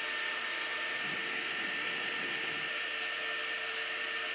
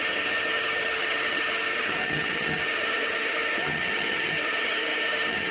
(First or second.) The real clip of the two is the first